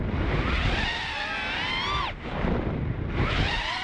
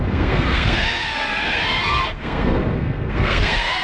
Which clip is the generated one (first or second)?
second